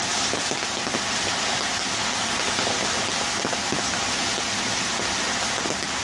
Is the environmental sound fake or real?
real